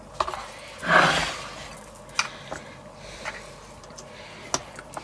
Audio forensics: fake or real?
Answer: real